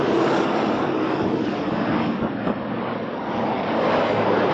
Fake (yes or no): yes